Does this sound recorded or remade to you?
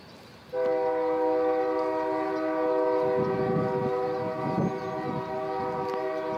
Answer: recorded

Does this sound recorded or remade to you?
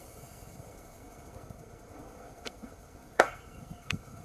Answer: remade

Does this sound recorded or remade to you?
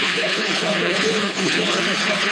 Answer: remade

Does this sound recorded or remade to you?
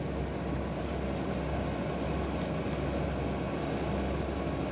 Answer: recorded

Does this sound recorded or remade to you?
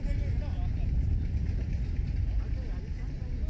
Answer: recorded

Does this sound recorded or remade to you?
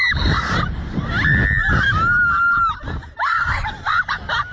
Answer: recorded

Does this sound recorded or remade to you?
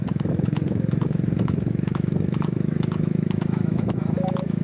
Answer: remade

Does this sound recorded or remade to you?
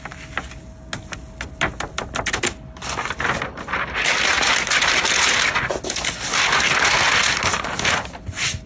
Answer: recorded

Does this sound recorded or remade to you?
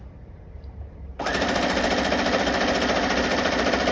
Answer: recorded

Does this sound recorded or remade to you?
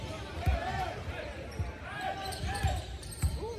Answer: remade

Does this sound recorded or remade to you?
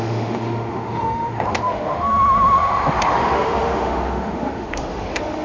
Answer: remade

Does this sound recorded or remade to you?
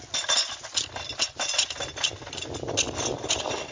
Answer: recorded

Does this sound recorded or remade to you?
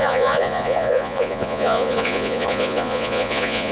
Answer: remade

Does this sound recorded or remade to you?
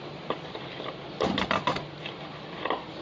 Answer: recorded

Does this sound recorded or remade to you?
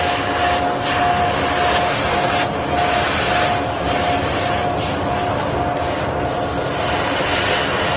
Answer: recorded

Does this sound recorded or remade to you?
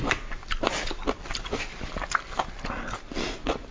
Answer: remade